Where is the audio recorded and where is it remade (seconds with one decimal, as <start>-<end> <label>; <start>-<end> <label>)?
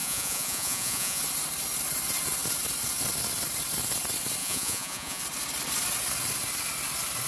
0.0-1.2 remade; 1.2-4.4 recorded; 4.4-5.2 remade; 5.2-7.3 recorded